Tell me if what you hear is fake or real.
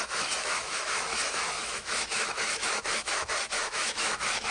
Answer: fake